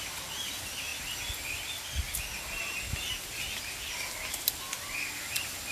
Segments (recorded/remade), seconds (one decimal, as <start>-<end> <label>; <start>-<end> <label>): 0.0-5.7 recorded